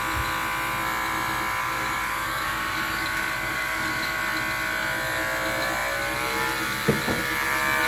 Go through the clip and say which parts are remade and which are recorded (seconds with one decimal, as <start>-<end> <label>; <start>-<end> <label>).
0.0-1.6 recorded; 1.6-4.2 remade; 4.2-7.9 recorded

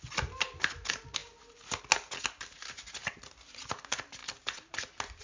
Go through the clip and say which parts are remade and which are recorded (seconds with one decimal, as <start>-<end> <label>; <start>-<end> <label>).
0.0-5.2 recorded

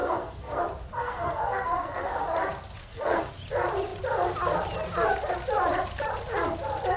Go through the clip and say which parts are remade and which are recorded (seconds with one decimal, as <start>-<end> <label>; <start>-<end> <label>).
0.0-0.6 remade; 0.6-1.0 recorded; 1.0-2.2 remade; 2.2-2.8 recorded; 2.8-3.3 remade; 3.3-7.0 recorded

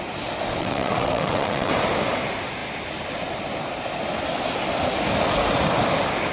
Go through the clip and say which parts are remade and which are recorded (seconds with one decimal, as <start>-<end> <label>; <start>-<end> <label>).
0.0-0.6 recorded; 0.6-1.7 remade; 1.7-6.3 recorded

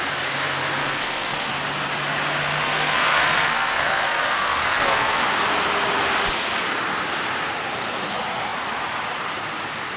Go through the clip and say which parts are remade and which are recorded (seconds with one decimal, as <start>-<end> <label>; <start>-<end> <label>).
0.0-0.8 recorded; 0.8-1.5 remade; 1.5-2.4 recorded; 2.4-5.2 remade; 5.2-10.0 recorded

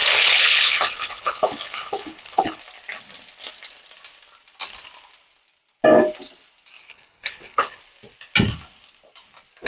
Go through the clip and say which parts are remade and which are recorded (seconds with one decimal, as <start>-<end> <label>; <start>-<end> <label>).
0.0-2.6 remade; 2.6-6.9 recorded; 6.9-7.8 remade; 7.8-9.7 recorded